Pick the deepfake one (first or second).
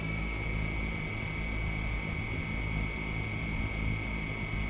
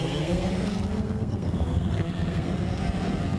second